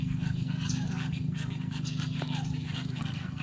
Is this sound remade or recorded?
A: remade